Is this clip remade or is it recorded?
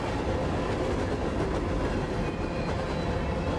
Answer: recorded